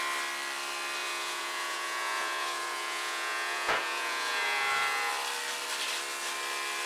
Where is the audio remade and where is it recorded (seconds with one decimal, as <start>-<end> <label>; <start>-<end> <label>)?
0.0-1.0 recorded; 1.0-5.1 remade; 5.1-6.9 recorded